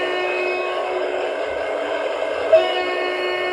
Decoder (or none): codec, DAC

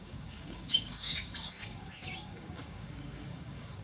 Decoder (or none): codec, DAC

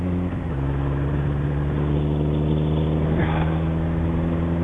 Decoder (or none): none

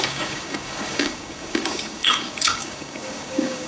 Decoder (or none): codec, DAC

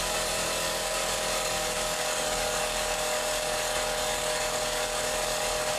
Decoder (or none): codec, DAC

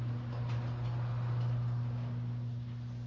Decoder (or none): none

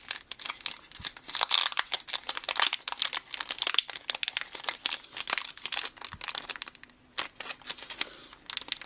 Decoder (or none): none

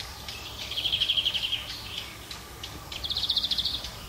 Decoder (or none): codec, DAC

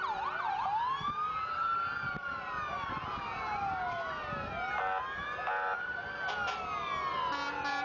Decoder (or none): none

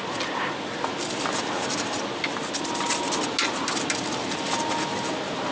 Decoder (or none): none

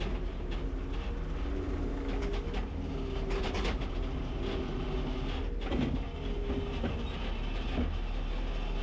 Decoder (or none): none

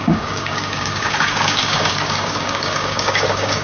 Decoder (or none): codec, DAC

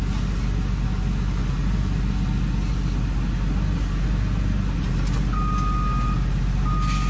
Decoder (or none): none